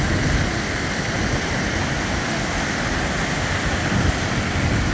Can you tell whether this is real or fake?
real